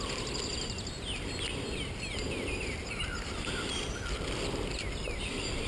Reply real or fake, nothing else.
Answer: fake